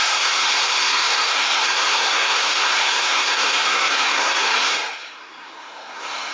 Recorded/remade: remade